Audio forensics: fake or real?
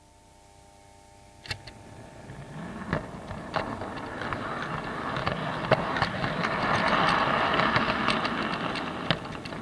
real